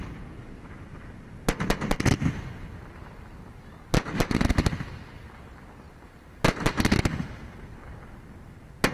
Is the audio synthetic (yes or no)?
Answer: no